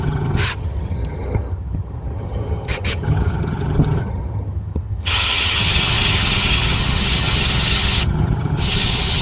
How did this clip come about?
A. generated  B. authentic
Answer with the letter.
A